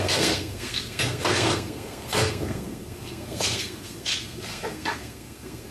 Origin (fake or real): fake